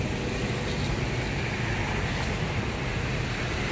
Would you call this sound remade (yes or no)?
no